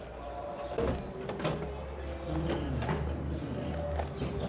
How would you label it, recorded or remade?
recorded